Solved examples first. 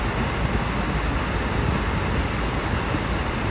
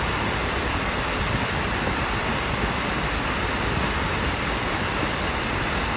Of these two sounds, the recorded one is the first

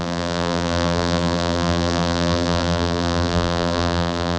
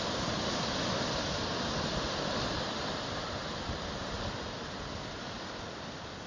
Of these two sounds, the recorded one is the second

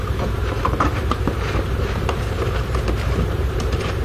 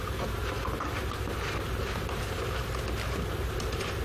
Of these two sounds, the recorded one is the second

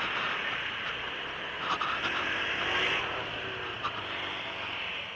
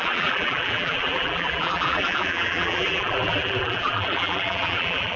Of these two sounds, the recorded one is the first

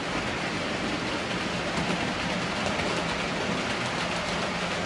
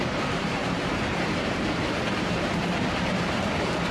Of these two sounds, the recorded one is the first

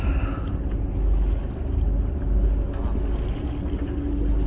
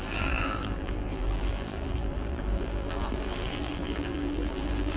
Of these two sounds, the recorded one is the first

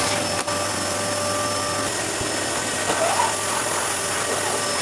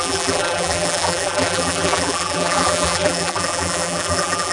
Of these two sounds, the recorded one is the first